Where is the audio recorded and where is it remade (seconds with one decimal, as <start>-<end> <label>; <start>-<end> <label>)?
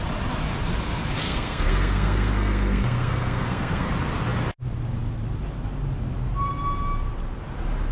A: 0.0-1.2 recorded; 1.2-3.9 remade; 3.9-7.9 recorded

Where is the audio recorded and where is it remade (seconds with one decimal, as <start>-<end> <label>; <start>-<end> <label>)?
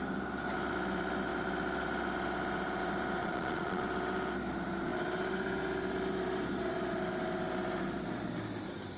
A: 0.0-3.2 recorded; 3.2-3.8 remade; 3.8-9.0 recorded